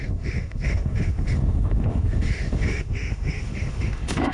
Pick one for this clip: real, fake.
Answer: fake